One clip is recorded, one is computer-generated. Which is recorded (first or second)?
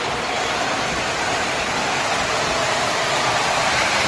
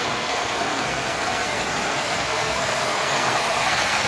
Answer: first